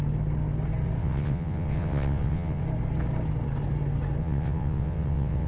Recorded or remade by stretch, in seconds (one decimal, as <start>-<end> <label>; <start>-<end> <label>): 0.0-1.0 recorded; 1.0-2.6 remade; 2.6-4.2 recorded; 4.2-5.5 remade